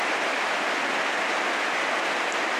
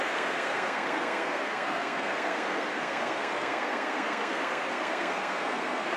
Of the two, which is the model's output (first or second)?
second